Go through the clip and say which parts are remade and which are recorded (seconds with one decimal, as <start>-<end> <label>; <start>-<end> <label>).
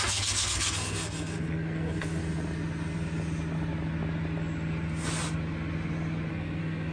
0.0-2.2 remade; 2.2-6.3 recorded; 6.3-6.9 remade